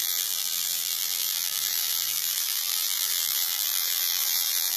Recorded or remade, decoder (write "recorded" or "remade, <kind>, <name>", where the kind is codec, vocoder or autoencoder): remade, vocoder, BigVGAN v2